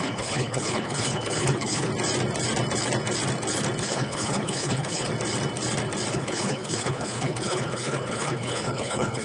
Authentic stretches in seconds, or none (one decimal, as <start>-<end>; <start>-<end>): 1.9-3.8; 5.1-6.1